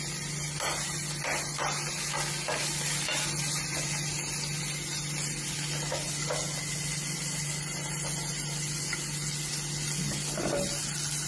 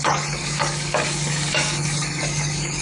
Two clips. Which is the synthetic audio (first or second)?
second